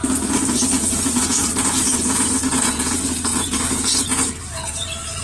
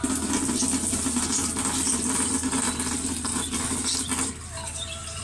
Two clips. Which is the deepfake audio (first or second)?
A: first